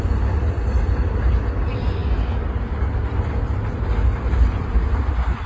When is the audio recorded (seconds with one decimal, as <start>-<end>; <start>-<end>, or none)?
none